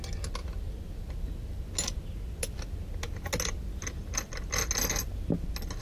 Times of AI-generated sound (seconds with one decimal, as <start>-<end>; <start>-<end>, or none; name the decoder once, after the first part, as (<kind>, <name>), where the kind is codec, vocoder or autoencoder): none